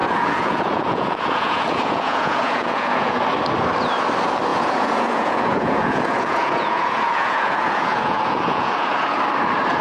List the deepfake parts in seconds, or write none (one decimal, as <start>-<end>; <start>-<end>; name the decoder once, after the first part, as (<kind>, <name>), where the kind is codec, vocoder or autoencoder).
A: 0.0-3.2 (vocoder, Vocos); 4.5-9.2